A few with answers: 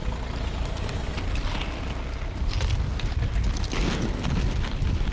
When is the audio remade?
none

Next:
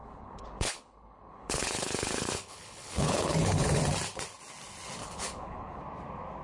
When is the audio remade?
0.0-3.8 (codec, HILCodec); 5.0-5.8

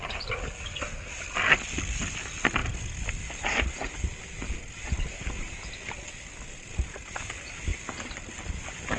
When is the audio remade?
none

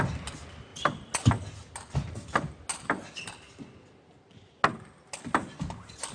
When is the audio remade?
none

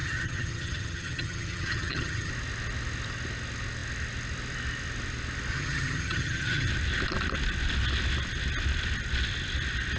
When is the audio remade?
0.0-2.3 (vocoder, HiFi-GAN); 5.5-6.7

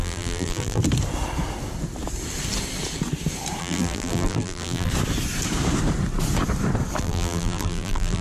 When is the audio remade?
0.0-0.8 (vocoder, BigVGAN v2); 3.6-4.9; 7.0-8.2